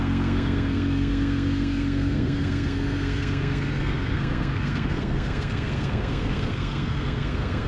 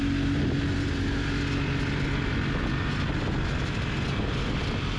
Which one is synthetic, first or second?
first